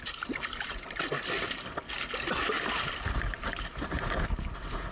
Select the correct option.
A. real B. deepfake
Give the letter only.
A